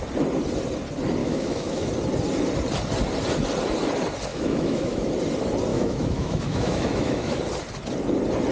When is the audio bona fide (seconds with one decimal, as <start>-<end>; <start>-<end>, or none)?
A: 0.0-1.2; 1.9-4.3; 5.1-5.7; 7.4-8.5